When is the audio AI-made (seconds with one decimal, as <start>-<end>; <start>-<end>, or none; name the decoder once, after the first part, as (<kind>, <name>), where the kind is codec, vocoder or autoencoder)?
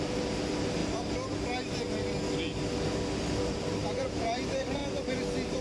0.0-0.8 (vocoder, BigVGAN v2); 3.4-4.8